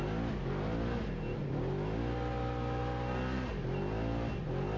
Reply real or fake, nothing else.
real